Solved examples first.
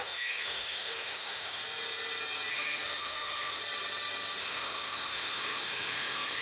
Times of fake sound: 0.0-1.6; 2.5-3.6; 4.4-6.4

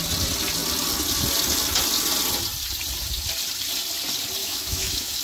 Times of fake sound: 4.4-5.2

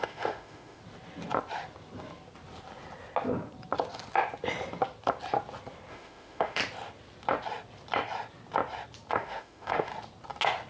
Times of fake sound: 0.0-0.8; 5.9-6.6; 9.1-9.9

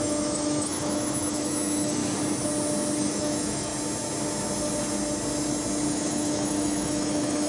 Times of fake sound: 0.0-2.0; 3.0-3.7; 5.9-7.5

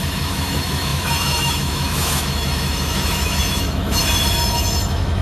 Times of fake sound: 0.0-4.0; 4.5-5.2